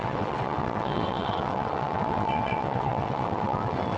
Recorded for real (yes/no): no